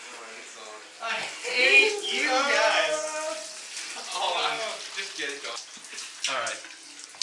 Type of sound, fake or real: real